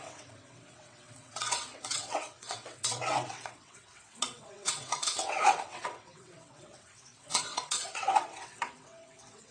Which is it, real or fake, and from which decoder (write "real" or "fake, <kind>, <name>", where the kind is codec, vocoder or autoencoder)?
fake, vocoder, WaveNeXt